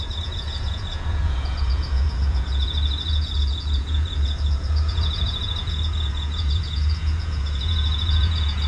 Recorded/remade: remade